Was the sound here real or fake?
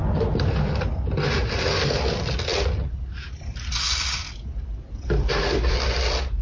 real